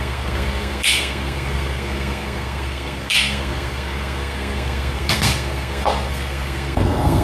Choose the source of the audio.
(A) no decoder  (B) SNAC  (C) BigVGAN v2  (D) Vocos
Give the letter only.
B